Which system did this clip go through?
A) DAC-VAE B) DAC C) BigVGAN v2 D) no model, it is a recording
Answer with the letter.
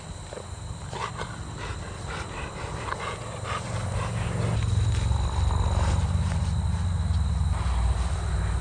D